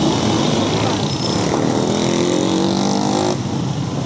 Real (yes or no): yes